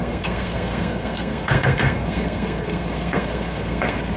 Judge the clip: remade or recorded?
remade